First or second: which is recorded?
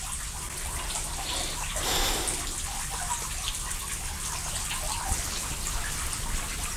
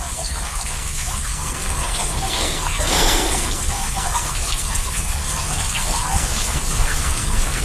first